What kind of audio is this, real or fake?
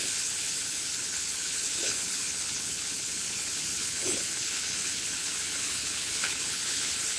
fake